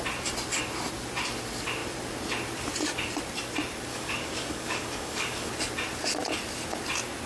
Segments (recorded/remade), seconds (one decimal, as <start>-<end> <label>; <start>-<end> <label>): 0.0-3.9 recorded; 3.9-5.5 remade; 5.5-7.3 recorded